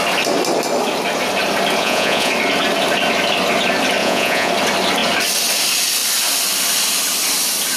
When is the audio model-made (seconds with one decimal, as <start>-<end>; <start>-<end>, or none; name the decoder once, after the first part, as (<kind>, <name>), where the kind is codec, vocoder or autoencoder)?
1.8-2.3 (vocoder, Vocos); 4.0-4.5